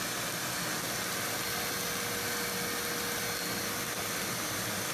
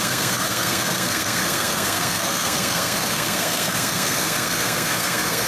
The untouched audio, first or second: first